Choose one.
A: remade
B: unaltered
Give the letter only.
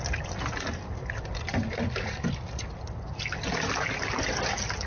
B